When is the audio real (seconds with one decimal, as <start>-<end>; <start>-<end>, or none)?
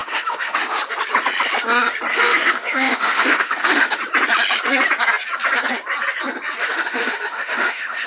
0.8-2.1; 4.0-6.6